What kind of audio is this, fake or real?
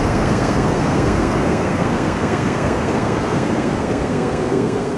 fake